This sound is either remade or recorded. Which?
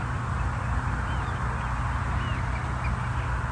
recorded